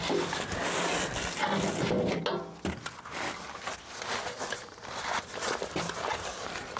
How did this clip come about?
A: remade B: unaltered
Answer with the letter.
B